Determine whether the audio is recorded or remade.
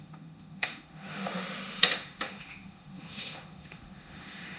remade